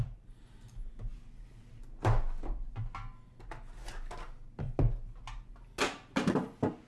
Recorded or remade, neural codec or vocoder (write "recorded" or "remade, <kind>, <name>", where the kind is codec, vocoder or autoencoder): recorded